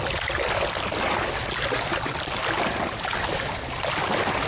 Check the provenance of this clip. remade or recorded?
recorded